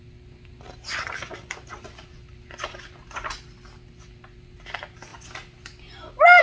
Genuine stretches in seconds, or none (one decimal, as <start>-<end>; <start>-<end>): 0.0-6.4